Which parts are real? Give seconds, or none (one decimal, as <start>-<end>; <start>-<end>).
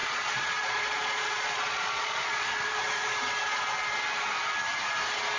3.2-5.4